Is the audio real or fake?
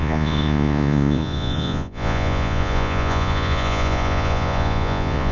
fake